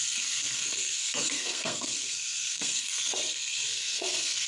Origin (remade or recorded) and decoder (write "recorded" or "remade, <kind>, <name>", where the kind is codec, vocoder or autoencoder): remade, codec, SNAC